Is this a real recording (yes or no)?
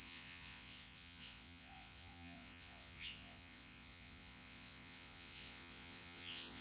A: no